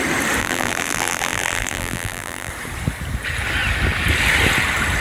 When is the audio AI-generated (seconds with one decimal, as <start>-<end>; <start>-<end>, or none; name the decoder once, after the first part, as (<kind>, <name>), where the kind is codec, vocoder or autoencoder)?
0.4-2.5 (vocoder, BigVGAN v2)